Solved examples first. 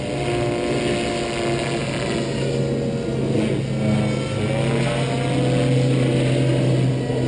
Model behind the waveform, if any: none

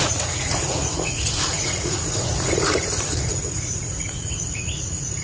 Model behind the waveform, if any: vocoder, Vocos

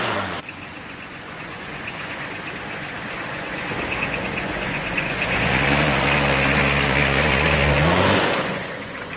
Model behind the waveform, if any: vocoder, Vocos